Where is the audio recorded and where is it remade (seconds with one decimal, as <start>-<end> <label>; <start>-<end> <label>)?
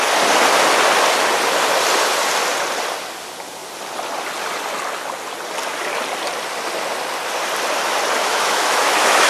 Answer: 0.0-8.2 recorded; 8.2-9.3 remade